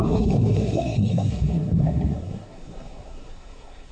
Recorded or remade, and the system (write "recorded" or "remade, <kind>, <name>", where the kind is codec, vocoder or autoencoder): remade, codec, SNAC